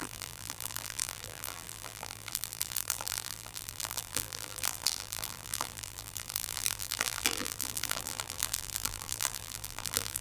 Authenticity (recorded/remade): remade